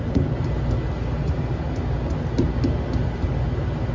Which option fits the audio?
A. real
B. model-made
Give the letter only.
A